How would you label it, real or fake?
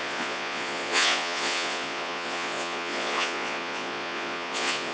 fake